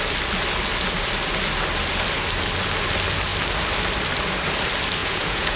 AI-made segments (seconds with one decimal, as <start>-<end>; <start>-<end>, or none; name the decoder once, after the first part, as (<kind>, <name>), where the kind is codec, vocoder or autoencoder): 5.0-5.6 (vocoder, Vocos)